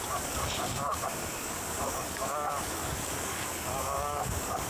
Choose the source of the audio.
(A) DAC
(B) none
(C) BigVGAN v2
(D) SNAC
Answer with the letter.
A